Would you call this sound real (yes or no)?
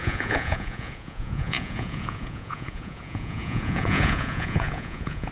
no